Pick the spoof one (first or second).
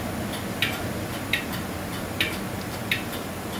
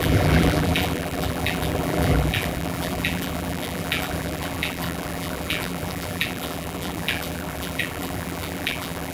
second